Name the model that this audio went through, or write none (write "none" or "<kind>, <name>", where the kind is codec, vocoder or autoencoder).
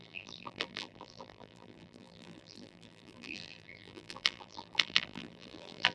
vocoder, BigVGAN v2